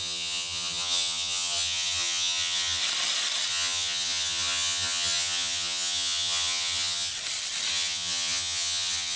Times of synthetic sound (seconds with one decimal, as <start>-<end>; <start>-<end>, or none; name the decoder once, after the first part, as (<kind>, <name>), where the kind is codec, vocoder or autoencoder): 0.0-2.8 (vocoder, HiFi-GAN); 3.5-7.1; 7.7-9.2